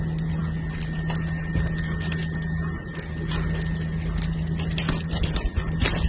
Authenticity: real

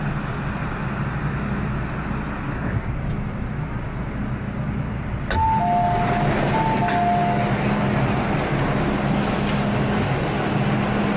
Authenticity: real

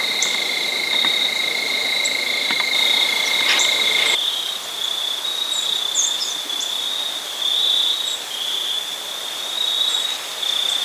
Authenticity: fake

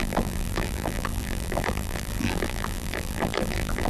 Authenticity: fake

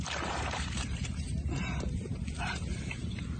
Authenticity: fake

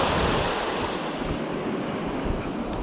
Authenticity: fake